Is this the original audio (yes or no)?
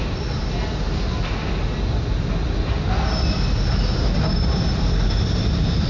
yes